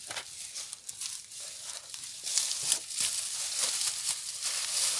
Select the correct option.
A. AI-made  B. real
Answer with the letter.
B